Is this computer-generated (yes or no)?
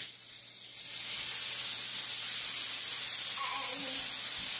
no